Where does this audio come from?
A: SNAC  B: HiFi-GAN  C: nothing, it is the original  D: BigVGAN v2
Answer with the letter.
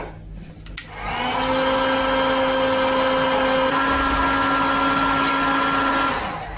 C